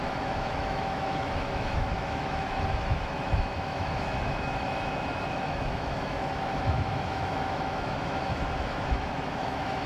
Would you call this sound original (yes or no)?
no